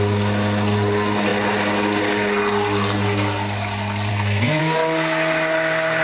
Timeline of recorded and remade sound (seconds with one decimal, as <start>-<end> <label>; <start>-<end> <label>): 0.0-4.1 recorded; 4.1-4.6 remade; 4.6-6.0 recorded